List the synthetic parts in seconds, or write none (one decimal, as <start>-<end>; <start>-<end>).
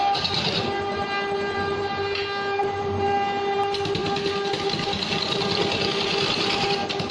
none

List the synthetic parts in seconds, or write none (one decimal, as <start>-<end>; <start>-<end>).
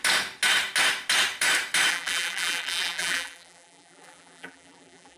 1.9-5.2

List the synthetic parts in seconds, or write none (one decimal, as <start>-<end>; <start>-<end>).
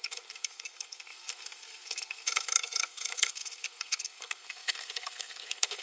0.0-5.8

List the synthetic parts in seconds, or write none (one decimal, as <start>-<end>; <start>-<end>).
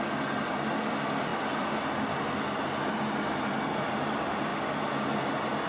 none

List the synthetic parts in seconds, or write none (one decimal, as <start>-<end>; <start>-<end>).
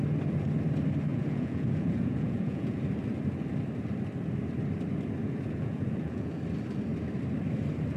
1.1-2.8; 5.2-6.4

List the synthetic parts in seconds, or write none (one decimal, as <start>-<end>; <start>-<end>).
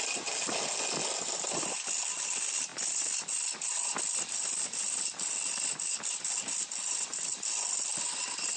none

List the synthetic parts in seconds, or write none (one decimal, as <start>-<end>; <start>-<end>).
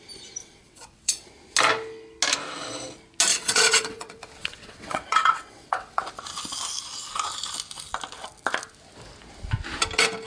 0.4-1.3; 3.3-6.0